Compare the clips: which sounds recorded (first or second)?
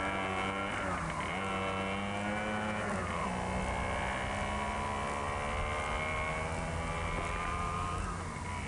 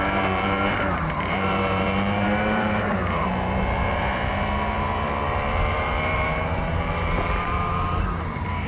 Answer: first